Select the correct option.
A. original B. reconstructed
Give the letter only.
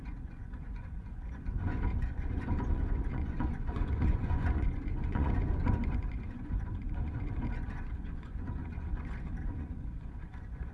B